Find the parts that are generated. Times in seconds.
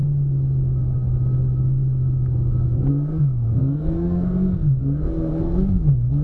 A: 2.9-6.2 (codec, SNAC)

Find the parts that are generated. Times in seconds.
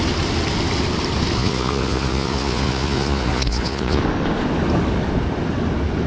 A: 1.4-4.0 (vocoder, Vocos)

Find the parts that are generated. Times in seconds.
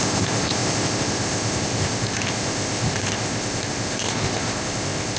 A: 0.0-5.2 (codec, ZipCodec)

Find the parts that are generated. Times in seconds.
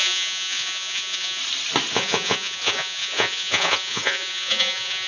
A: 0.0-1.4 (vocoder, Vocos); 1.9-5.1